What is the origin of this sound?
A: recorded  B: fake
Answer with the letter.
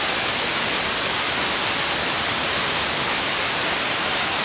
A